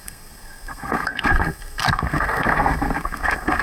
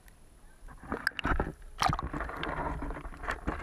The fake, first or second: first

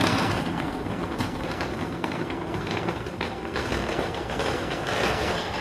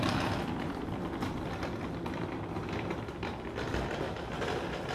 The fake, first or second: first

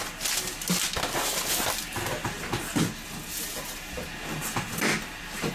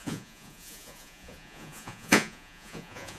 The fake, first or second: second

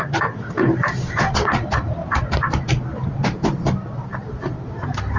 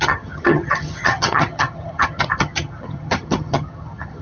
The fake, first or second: second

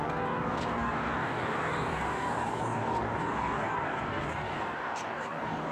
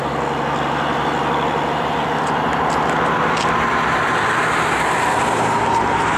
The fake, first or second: first